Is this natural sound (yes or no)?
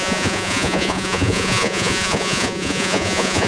no